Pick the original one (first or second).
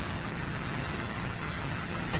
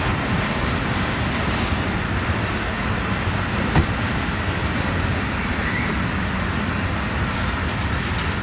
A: second